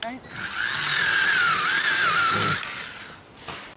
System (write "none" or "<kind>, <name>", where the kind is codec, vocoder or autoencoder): none